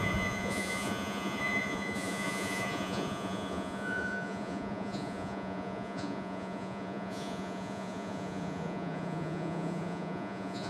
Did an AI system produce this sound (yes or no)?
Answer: yes